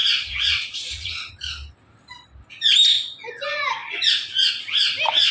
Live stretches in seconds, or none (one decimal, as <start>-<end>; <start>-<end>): 1.3-3.8; 4.5-5.3